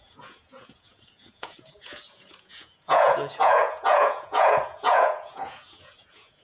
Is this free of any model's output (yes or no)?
no